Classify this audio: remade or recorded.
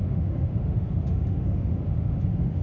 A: remade